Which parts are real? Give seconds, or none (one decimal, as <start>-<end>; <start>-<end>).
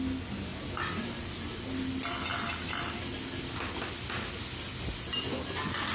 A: 0.0-5.9